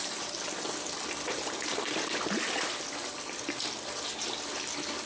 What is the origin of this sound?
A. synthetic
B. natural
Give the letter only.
B